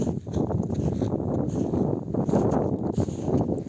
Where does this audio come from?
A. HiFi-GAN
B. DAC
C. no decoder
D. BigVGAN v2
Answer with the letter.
C